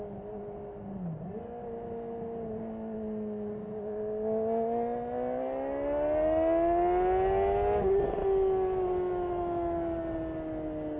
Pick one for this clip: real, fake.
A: real